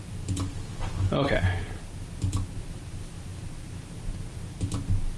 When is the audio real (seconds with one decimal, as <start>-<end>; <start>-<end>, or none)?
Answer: 0.0-5.2